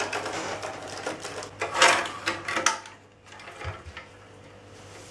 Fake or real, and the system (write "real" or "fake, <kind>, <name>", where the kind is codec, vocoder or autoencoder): real